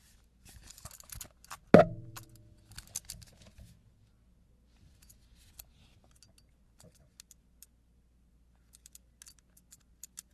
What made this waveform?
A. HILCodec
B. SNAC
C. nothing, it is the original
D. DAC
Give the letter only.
C